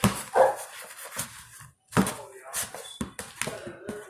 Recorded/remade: recorded